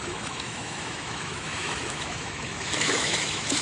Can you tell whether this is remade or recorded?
remade